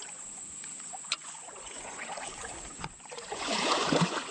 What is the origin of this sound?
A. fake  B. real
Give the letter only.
A